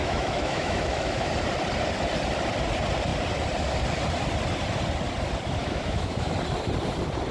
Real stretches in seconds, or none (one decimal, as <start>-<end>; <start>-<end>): 1.3-5.6; 6.3-7.3